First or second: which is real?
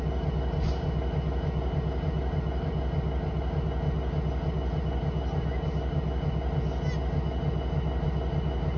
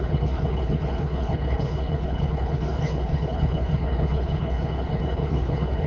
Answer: first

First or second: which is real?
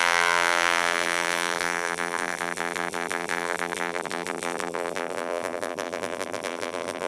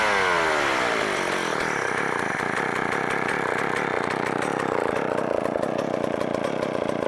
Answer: second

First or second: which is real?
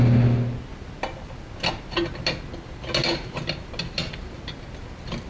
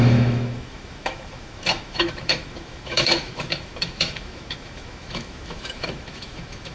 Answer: first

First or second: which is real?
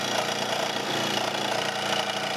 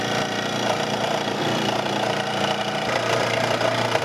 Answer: first